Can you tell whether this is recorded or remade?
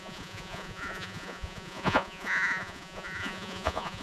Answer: remade